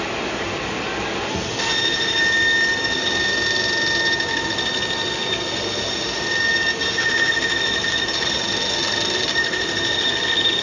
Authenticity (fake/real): real